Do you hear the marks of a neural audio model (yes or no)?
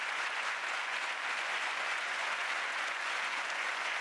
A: yes